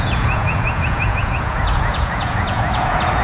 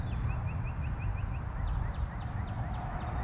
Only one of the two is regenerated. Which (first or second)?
first